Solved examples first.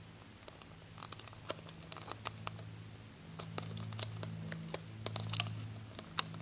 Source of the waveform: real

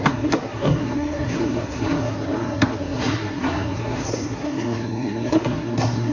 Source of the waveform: fake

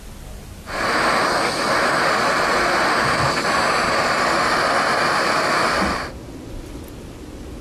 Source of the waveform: real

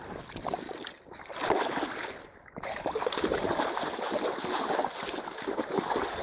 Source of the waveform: real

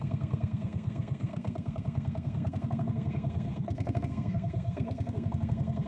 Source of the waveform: fake